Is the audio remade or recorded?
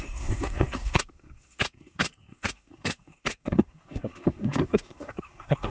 remade